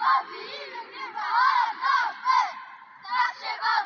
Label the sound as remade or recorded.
remade